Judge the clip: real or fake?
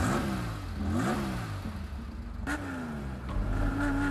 real